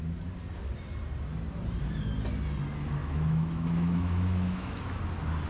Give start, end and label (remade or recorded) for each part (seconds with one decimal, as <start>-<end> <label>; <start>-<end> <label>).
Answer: 0.0-3.0 recorded; 3.0-4.8 remade; 4.8-5.5 recorded